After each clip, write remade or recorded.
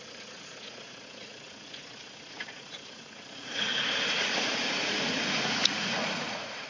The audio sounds remade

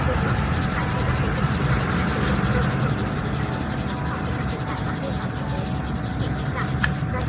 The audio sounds recorded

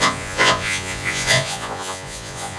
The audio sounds remade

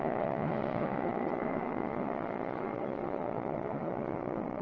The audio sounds remade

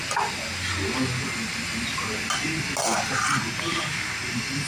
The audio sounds recorded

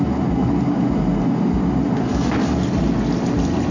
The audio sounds recorded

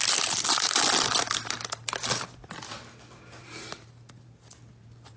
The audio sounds recorded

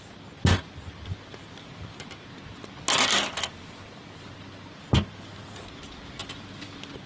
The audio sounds recorded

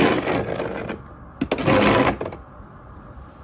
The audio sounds recorded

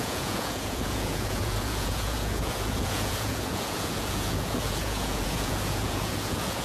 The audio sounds remade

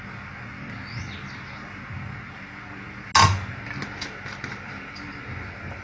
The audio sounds recorded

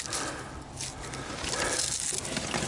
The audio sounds recorded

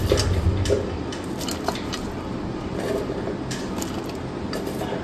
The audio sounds recorded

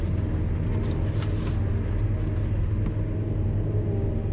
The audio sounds recorded